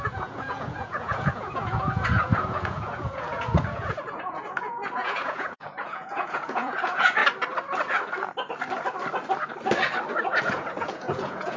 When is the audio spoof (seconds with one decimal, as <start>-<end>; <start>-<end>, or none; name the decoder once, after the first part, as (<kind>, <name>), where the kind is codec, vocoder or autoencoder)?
0.0-7.2 (vocoder, Vocos); 10.4-11.6